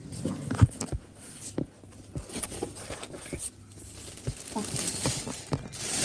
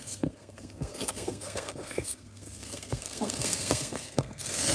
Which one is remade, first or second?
second